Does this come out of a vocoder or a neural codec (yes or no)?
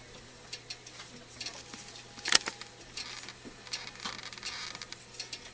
no